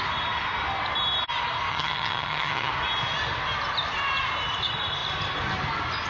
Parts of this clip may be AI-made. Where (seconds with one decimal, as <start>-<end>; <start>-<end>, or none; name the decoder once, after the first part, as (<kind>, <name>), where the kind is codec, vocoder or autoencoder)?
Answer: 1.7-2.7 (vocoder, HiFi-GAN)